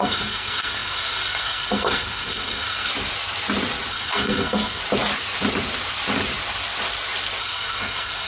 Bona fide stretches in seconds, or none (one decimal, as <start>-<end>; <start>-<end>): 2.9-3.9; 4.8-7.4